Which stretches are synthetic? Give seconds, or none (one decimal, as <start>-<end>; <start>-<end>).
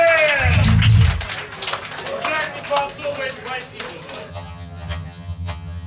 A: 4.3-5.9